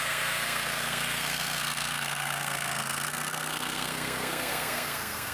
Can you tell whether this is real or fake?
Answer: fake